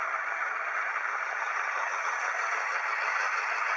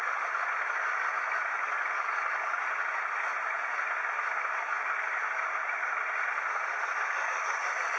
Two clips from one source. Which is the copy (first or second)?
first